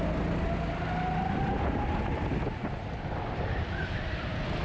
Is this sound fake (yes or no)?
no